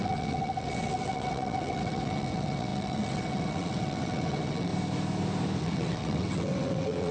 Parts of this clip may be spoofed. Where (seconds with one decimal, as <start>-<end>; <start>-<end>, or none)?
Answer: 0.0-4.7; 5.6-7.1